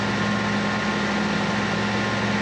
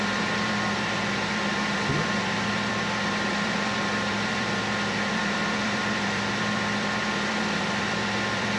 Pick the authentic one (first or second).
first